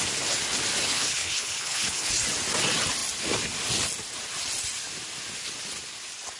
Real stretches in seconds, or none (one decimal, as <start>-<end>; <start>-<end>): 0.0-0.8; 2.1-6.4